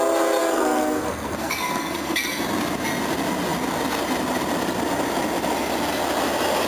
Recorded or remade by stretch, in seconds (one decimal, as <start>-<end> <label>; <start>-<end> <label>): 0.0-0.4 recorded; 0.4-2.4 remade; 2.4-6.7 recorded